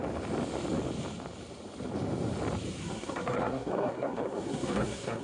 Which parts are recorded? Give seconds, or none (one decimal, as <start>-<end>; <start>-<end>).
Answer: 0.0-2.8